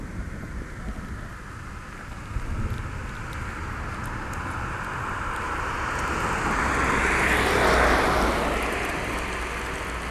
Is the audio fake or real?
real